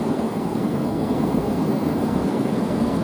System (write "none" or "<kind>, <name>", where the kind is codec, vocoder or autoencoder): codec, SNAC